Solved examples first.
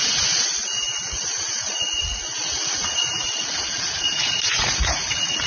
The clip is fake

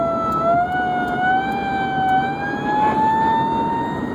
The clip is real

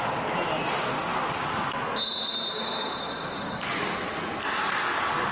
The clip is real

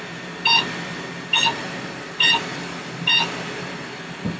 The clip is real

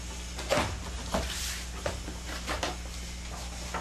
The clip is real